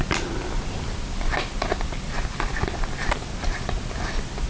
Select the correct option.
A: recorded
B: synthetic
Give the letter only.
A